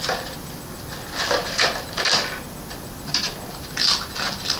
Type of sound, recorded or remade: recorded